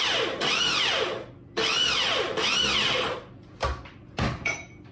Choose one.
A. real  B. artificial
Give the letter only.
A